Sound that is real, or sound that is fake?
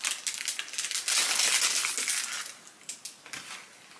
real